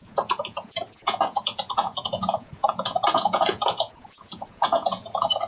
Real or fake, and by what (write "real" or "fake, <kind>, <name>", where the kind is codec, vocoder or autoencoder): fake, vocoder, Vocos